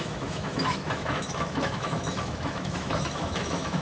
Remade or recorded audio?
remade